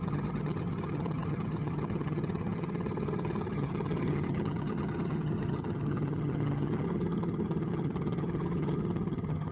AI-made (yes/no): yes